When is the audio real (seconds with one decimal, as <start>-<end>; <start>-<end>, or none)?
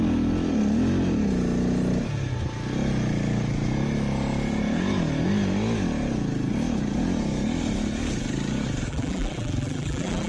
0.0-8.9